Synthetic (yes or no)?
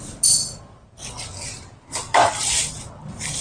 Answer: no